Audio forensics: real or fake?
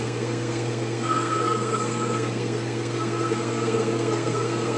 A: fake